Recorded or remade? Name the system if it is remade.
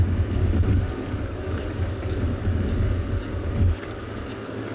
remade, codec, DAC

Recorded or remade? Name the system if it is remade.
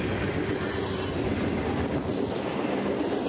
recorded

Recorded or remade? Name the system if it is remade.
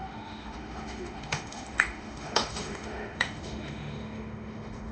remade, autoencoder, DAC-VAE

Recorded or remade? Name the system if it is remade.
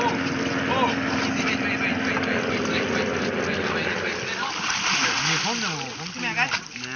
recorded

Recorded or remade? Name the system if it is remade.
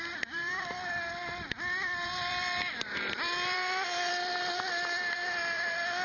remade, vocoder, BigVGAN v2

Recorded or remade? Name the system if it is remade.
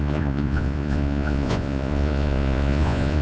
remade, vocoder, Vocos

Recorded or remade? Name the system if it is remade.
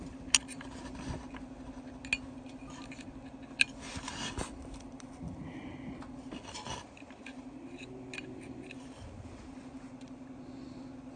recorded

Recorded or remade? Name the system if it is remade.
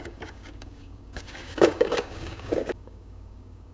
remade, codec, DAC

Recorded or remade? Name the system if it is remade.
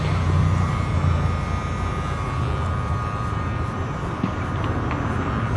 recorded